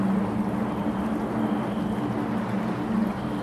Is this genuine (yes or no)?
yes